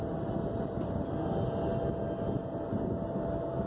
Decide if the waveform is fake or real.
real